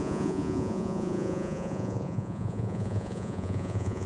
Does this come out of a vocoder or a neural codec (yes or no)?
yes